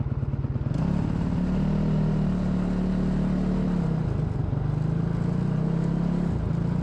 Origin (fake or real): real